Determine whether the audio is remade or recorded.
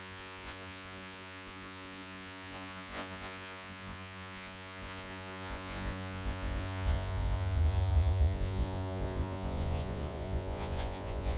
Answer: remade